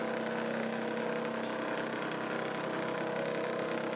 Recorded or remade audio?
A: recorded